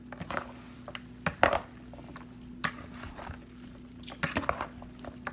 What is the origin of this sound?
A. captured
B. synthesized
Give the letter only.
A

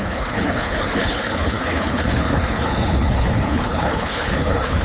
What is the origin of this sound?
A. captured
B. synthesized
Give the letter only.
B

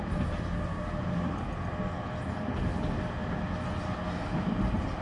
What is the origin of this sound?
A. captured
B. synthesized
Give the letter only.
A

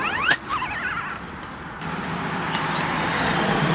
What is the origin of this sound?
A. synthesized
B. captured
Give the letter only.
A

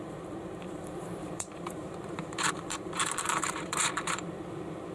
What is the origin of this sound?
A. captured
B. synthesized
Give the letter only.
B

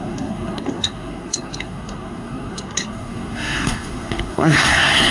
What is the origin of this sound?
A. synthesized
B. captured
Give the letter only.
A